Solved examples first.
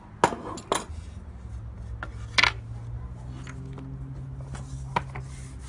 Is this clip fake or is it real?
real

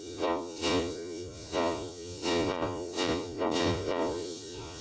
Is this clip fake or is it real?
fake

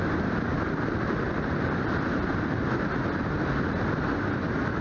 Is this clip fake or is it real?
real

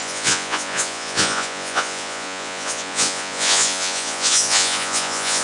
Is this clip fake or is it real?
fake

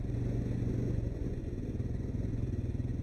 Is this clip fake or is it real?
fake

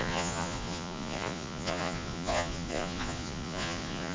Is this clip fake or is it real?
fake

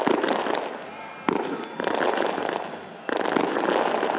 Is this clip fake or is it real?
real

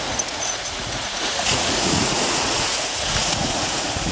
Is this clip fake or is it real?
fake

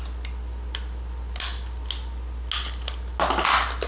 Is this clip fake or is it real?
real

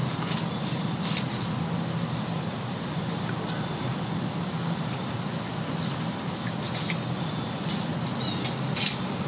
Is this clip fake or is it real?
real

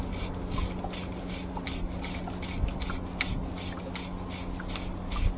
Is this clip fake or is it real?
real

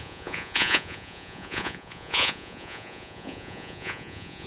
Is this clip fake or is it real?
fake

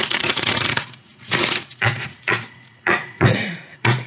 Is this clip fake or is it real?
fake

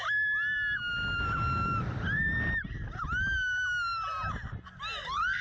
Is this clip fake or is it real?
real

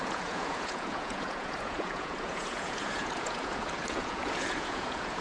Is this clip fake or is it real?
fake